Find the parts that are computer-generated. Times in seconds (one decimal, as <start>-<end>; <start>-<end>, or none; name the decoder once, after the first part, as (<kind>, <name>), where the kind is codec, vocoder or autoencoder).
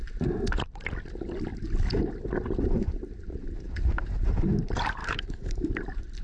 5.0-5.7 (autoencoder, DAC-VAE)